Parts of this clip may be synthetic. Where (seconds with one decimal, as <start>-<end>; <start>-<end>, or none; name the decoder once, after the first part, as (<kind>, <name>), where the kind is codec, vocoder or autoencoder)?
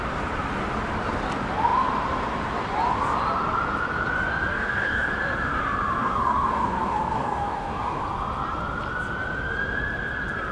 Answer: 4.5-5.1 (codec, DAC); 6.0-8.0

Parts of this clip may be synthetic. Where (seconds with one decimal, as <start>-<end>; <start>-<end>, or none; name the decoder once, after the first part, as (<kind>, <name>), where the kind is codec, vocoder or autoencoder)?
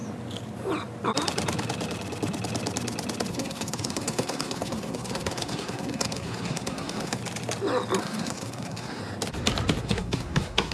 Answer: 3.3-7.2 (codec, SNAC); 8.0-9.0; 9.8-10.7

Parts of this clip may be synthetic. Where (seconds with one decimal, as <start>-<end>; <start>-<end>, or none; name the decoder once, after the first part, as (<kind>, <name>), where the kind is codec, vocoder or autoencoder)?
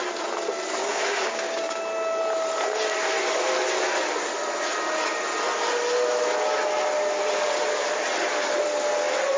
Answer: 0.8-1.8 (codec, DAC)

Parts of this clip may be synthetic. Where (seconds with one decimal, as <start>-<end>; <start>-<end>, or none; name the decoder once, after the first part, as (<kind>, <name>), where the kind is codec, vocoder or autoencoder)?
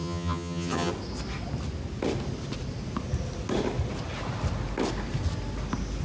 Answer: 0.0-0.9 (vocoder, HiFi-GAN)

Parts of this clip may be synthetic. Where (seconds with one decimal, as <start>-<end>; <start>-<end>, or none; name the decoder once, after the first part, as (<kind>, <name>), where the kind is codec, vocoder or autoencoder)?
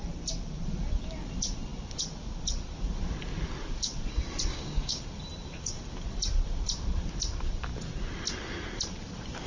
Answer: 4.5-5.0 (codec, DAC)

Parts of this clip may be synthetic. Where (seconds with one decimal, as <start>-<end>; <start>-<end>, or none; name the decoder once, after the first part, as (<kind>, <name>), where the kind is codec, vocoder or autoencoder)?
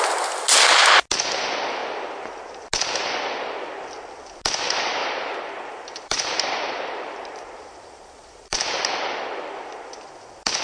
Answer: 5.0-9.2 (vocoder, BigVGAN v2)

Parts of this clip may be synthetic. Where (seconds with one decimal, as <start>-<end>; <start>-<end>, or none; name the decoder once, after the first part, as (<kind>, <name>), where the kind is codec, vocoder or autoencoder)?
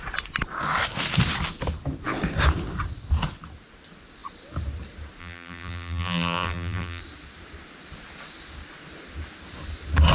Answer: 5.2-7.0 (vocoder, BigVGAN v2)